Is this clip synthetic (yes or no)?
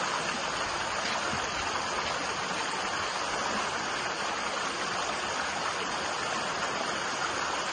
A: no